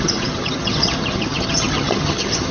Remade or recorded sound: remade